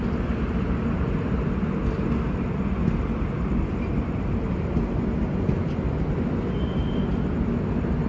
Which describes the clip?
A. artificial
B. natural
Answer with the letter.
B